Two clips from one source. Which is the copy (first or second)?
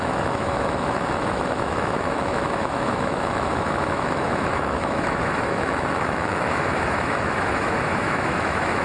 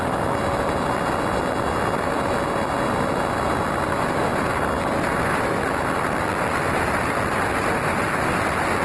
first